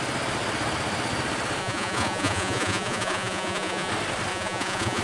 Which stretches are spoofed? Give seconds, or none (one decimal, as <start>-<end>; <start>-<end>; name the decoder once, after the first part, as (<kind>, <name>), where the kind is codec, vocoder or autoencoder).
1.6-3.9 (vocoder, Vocos); 4.3-5.0